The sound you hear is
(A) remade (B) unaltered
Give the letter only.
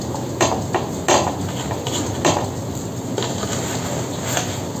B